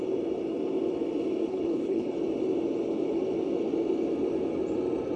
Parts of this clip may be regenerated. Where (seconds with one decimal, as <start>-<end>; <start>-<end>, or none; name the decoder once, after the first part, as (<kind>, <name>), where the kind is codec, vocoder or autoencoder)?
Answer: 1.5-2.1 (codec, HILCodec)